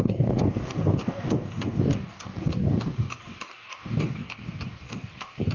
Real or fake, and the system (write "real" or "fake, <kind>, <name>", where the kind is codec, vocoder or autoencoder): fake, codec, DAC